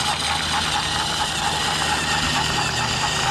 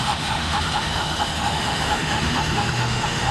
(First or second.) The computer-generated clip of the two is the second